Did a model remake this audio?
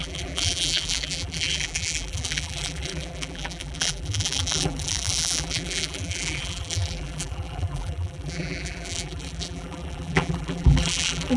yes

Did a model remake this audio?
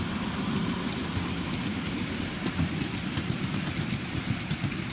no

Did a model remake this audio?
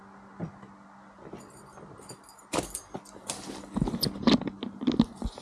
no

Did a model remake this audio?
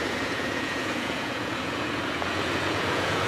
yes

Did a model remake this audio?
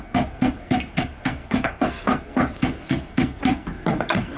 yes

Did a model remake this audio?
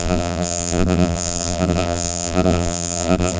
yes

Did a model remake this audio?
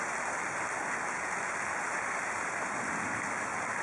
no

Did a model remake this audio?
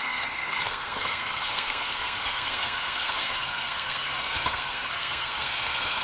yes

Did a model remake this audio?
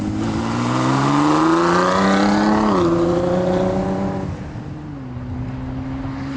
no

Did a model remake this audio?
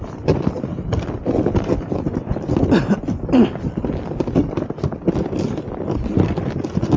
no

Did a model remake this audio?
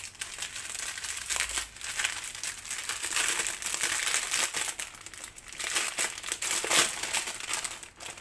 no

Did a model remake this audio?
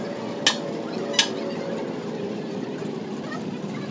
no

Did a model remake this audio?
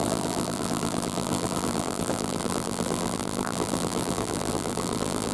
yes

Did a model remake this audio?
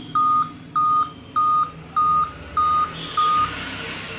no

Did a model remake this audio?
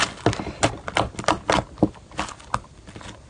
no